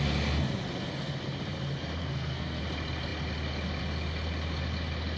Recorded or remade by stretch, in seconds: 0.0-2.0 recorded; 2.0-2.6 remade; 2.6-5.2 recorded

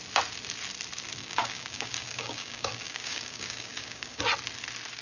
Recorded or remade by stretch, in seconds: 0.0-1.2 recorded; 1.2-4.2 remade; 4.2-5.0 recorded

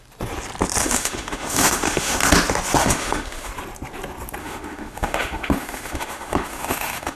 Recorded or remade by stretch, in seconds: 0.0-0.8 recorded; 0.8-2.2 remade; 2.2-2.8 recorded; 2.8-3.5 remade; 3.5-4.4 recorded; 4.4-7.2 remade